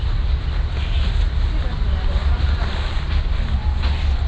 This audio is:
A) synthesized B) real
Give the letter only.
B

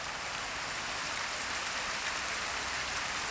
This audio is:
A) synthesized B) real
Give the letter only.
B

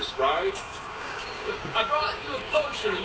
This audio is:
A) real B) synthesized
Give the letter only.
B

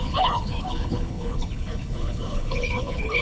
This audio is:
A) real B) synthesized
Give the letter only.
B